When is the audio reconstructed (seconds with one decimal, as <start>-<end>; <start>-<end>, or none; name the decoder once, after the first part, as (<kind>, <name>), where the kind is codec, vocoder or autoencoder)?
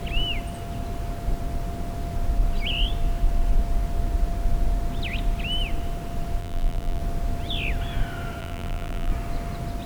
6.4-7.0 (vocoder, BigVGAN v2); 8.4-9.1